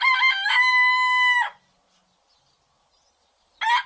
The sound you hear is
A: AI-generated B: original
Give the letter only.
B